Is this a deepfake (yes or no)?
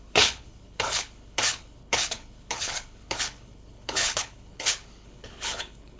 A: yes